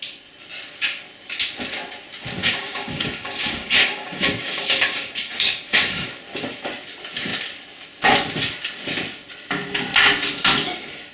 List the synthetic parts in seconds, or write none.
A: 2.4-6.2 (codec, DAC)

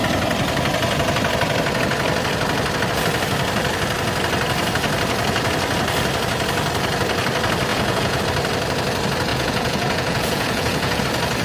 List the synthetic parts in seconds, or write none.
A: 7.7-8.2 (vocoder, Vocos); 9.3-11.0

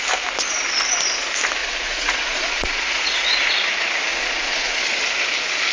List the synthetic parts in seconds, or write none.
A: 1.6-3.5 (vocoder, Vocos); 4.1-4.8

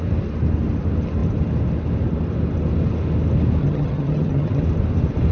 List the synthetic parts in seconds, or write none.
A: 3.6-4.6 (vocoder, HiFi-GAN)

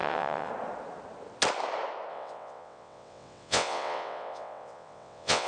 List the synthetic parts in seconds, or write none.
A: 0.0-0.5 (vocoder, WaveNeXt); 2.1-5.5

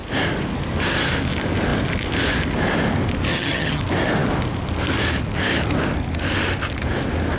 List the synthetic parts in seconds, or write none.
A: 3.3-3.8 (vocoder, HiFi-GAN)